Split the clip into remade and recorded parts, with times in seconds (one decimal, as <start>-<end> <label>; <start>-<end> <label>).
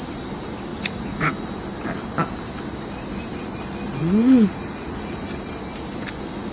0.0-0.7 recorded; 0.7-1.3 remade; 1.3-4.0 recorded; 4.0-5.3 remade; 5.3-6.5 recorded